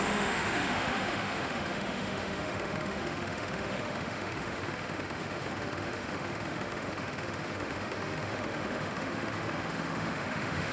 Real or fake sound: fake